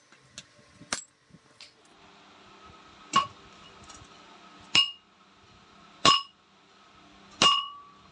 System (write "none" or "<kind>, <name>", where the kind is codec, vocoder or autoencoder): none